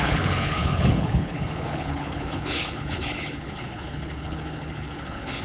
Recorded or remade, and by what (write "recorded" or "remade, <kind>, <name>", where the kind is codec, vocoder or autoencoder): remade, codec, HILCodec